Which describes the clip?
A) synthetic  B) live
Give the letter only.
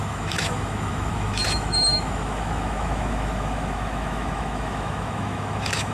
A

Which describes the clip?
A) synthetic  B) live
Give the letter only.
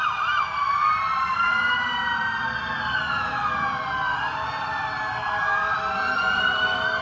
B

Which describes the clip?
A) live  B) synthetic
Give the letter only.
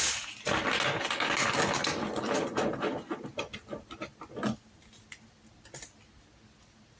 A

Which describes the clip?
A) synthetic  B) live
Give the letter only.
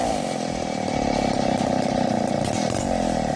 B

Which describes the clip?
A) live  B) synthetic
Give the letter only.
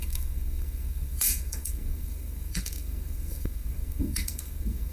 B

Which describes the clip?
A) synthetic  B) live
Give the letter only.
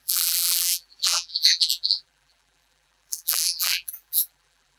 A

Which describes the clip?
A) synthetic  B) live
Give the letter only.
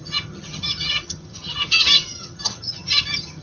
A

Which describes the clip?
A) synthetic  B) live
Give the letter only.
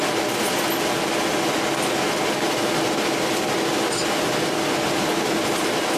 B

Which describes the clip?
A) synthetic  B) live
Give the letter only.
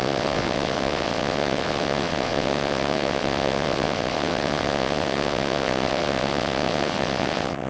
A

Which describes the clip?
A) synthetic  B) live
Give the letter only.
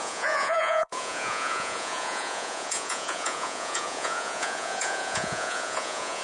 A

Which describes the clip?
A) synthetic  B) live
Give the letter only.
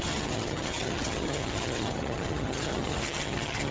A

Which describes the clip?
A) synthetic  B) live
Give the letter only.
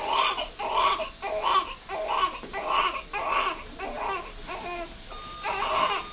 B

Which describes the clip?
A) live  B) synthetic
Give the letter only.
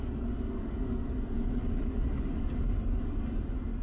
A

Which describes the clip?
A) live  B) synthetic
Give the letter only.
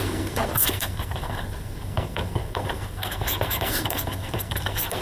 B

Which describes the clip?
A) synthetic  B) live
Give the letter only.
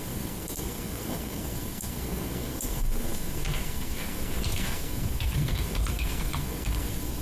A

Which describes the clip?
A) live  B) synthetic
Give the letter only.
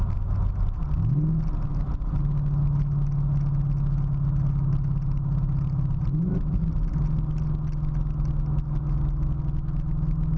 A